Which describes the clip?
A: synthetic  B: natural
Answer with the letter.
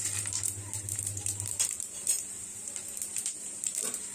A